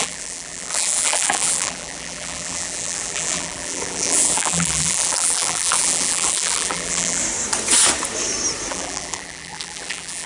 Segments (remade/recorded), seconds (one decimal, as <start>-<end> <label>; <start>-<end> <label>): 0.0-7.2 remade; 7.2-8.7 recorded; 8.7-10.3 remade